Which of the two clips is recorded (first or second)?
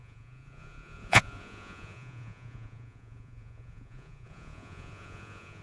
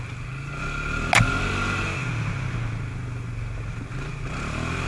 second